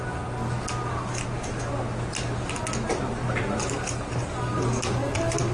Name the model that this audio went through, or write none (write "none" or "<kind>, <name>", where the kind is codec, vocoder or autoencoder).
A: none